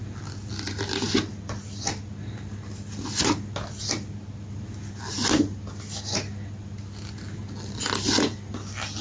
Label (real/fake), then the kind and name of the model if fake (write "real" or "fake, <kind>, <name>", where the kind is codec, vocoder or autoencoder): real